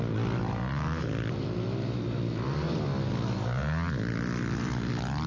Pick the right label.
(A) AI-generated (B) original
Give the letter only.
B